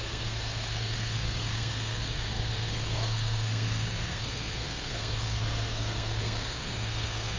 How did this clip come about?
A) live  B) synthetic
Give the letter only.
B